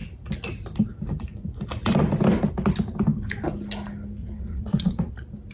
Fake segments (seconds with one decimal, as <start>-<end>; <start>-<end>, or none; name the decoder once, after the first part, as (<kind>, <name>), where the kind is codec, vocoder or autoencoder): 4.2-5.1 (vocoder, WaveNeXt)